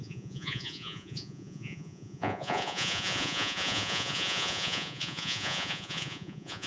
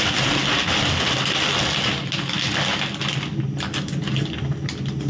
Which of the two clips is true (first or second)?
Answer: second